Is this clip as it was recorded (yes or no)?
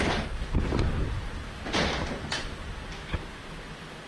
yes